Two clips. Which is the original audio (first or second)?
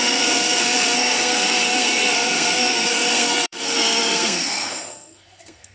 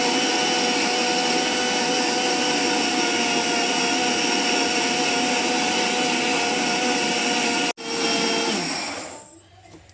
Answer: second